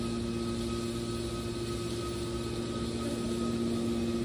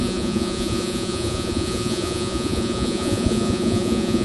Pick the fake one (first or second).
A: second